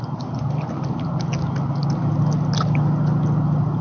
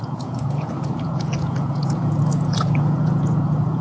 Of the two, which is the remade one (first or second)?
second